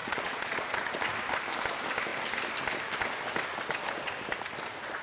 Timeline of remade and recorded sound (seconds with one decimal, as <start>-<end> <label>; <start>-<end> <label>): 0.0-0.8 remade; 0.8-5.0 recorded